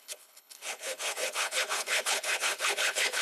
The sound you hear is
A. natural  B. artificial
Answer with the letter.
B